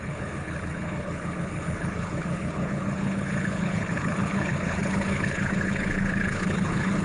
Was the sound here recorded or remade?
remade